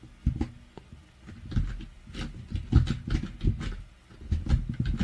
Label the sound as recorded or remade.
recorded